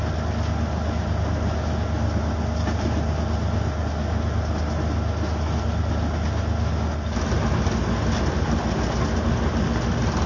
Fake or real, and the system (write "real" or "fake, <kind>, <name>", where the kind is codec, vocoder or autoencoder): real